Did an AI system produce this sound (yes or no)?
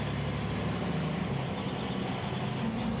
no